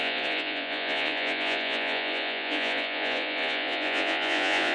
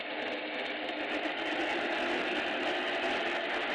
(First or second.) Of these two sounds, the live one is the second